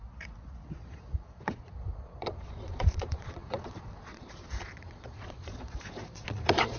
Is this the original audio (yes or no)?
no